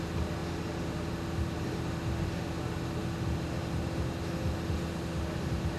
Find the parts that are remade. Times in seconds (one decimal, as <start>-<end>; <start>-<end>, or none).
none